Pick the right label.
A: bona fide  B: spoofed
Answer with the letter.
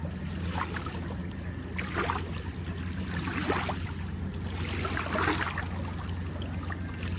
A